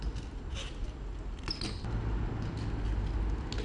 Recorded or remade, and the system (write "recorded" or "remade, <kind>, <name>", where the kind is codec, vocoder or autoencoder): recorded